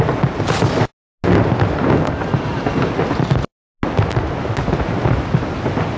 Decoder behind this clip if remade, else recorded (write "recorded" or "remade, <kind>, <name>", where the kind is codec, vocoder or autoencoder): recorded